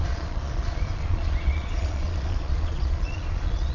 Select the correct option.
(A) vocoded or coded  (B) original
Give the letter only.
A